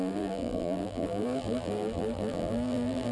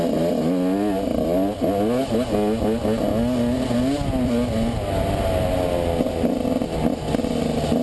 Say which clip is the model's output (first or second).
first